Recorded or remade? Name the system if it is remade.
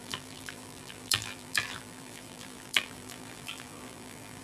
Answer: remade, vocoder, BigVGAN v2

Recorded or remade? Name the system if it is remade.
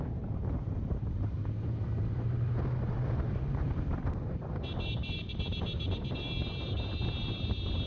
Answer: remade, vocoder, BigVGAN v2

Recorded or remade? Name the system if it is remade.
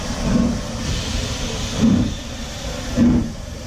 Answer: remade, vocoder, BigVGAN v2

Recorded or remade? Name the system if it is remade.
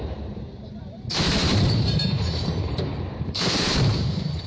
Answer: remade, vocoder, BigVGAN v2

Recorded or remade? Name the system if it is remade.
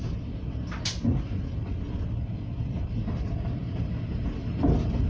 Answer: recorded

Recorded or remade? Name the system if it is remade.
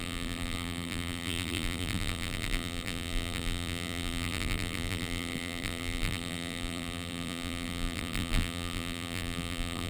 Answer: remade, vocoder, BigVGAN v2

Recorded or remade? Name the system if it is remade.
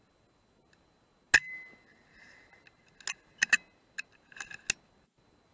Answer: recorded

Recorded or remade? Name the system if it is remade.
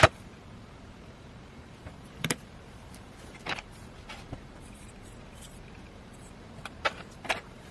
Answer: remade, vocoder, BigVGAN v2